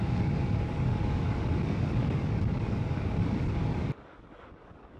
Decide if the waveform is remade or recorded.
remade